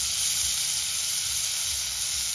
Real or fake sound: real